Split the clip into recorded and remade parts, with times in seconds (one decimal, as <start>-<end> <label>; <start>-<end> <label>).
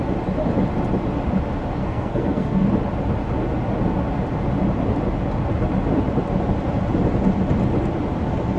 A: 0.0-1.8 recorded; 1.8-2.7 remade; 2.7-8.6 recorded